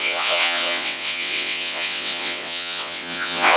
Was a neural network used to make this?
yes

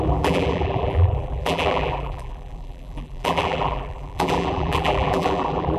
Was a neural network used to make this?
yes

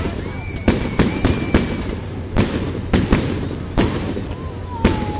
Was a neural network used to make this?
no